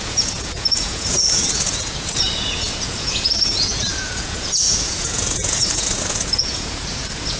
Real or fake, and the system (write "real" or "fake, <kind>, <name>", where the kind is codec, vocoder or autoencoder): fake, vocoder, Vocos